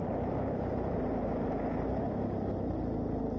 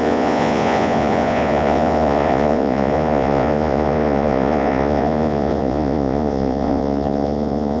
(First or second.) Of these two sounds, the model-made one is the second